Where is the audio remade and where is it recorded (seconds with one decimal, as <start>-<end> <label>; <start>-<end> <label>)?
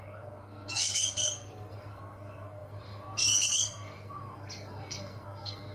0.0-5.7 remade